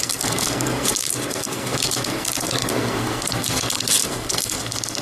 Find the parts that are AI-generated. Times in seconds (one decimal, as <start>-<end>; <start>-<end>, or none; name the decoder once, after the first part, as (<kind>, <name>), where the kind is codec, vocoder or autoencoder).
0.0-5.0 (codec, SNAC)